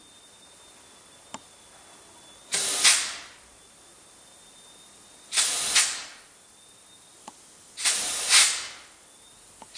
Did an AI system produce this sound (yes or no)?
no